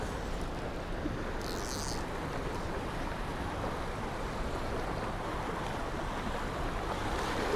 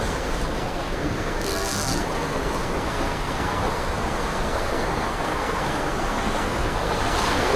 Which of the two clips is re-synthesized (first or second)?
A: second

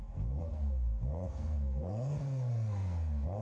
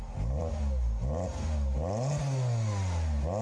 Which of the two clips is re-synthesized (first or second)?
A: first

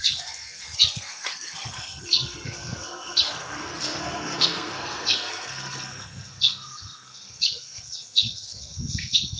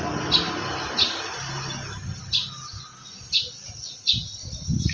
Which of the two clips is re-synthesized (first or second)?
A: first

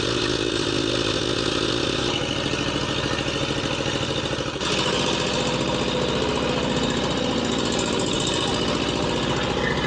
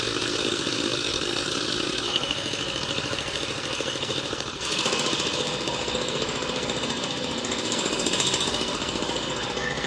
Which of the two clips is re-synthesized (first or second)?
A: second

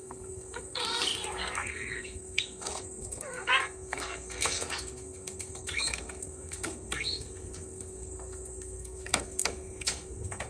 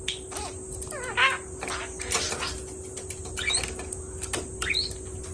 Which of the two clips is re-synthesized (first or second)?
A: first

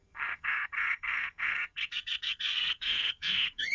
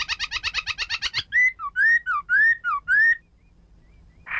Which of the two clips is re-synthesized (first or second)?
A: first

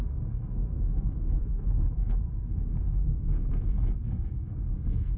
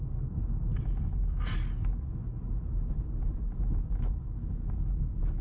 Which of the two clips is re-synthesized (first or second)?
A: first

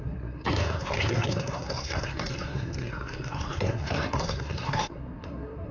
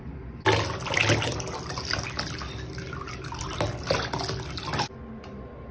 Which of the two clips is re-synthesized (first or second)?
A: first